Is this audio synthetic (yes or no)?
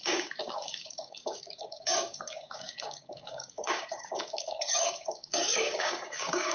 yes